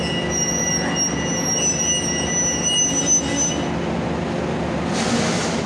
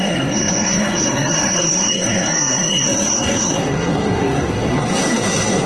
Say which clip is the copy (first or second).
second